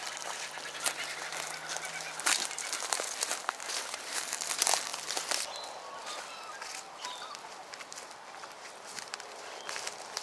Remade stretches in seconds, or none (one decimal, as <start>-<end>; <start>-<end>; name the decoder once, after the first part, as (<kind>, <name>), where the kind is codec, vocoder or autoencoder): none